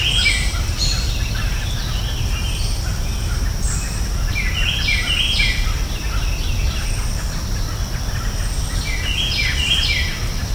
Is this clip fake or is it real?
real